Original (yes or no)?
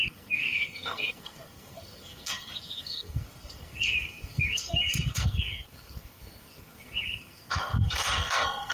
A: no